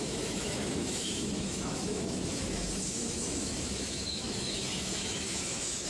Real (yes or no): no